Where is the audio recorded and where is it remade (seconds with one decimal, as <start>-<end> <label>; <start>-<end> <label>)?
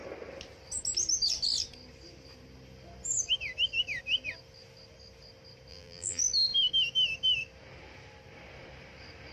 0.0-5.7 recorded; 5.7-6.2 remade; 6.2-9.3 recorded